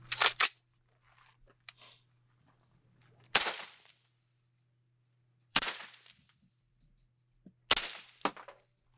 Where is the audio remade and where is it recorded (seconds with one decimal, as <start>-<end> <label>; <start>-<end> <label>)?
0.0-5.5 recorded; 5.5-6.8 remade; 6.8-9.0 recorded